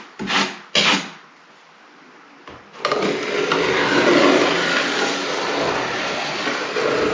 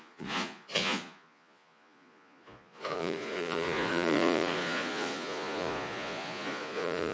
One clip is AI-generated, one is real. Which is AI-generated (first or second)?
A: second